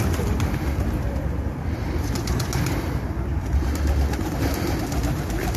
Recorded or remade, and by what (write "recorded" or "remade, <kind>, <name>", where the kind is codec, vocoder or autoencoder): recorded